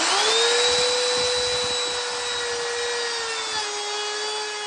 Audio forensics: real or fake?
real